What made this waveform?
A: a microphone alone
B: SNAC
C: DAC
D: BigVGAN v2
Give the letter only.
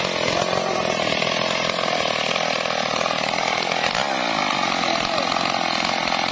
A